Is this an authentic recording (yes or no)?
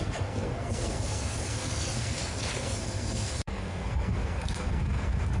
no